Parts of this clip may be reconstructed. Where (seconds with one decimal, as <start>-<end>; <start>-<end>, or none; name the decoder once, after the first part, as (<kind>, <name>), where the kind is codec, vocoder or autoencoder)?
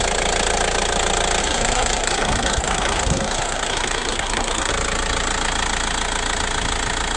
1.4-4.7 (codec, SNAC)